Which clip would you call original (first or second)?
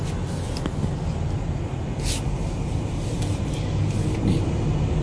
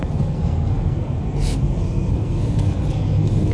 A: first